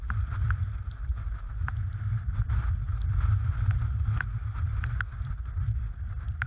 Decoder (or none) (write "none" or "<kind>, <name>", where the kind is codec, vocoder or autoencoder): none